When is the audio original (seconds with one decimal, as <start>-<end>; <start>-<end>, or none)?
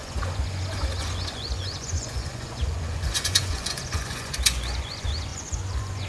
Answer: none